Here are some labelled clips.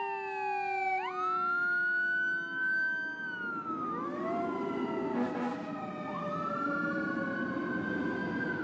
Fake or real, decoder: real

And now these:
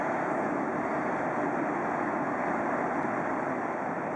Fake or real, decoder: real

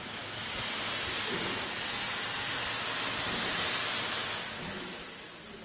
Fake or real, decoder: real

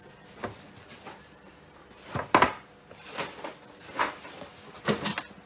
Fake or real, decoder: real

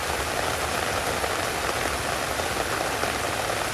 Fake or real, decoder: real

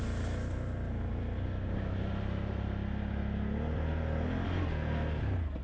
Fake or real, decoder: real